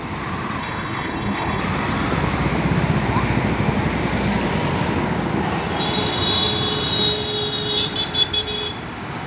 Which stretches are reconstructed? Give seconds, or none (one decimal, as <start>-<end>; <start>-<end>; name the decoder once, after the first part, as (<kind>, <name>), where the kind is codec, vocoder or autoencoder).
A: 0.6-1.6 (codec, HILCodec)